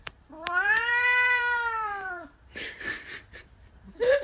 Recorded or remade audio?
remade